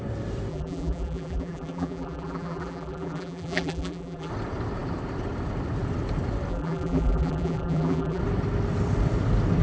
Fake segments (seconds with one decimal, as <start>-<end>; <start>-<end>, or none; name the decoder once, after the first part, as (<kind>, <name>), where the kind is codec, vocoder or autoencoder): 0.5-4.3 (vocoder, BigVGAN v2); 6.5-8.2